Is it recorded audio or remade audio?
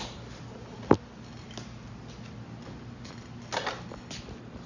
recorded